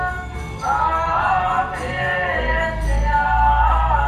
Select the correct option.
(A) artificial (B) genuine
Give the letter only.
A